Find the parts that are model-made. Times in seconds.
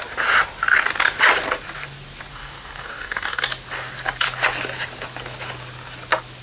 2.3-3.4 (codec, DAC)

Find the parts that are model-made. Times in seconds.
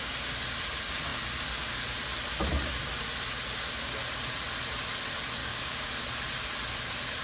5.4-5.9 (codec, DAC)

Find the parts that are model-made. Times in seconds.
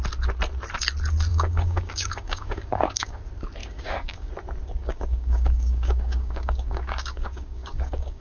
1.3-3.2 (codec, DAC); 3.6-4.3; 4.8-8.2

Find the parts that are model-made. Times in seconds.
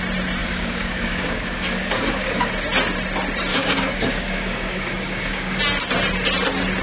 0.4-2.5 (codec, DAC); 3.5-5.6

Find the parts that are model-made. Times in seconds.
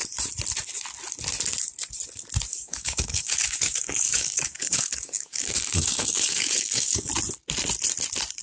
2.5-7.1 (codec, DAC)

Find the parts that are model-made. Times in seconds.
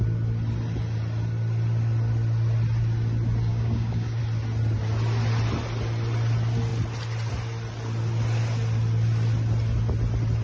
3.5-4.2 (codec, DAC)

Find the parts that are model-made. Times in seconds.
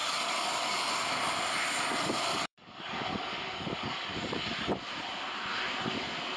0.0-0.9 (codec, DAC); 2.3-4.7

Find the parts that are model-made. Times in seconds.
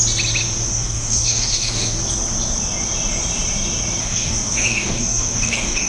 0.7-2.0 (codec, DAC); 4.0-5.9